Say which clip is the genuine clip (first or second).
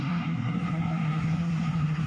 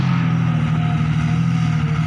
second